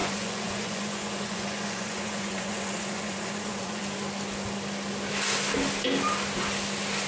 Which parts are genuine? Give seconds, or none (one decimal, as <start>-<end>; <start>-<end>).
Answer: 3.8-7.1